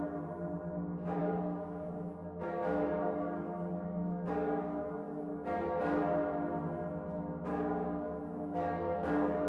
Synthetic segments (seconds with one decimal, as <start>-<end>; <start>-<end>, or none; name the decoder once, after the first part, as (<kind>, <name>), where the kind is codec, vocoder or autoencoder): 1.2-6.0 (codec, DAC); 7.5-9.5